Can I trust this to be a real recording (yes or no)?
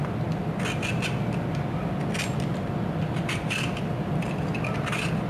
yes